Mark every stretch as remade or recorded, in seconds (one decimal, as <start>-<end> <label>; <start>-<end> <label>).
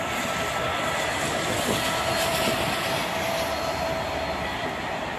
0.0-0.7 recorded; 0.7-3.8 remade; 3.8-5.2 recorded